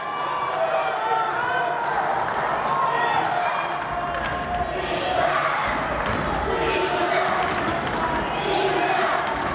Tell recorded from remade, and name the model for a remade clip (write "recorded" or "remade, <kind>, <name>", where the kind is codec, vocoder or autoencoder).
recorded